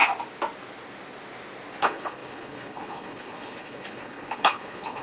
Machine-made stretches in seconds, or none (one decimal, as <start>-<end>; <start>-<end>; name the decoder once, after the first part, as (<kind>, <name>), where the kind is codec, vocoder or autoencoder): 1.8-5.0 (codec, HILCodec)